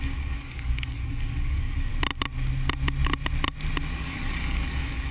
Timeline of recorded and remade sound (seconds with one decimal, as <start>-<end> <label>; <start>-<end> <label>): 0.0-1.9 remade; 1.9-3.9 recorded; 3.9-5.1 remade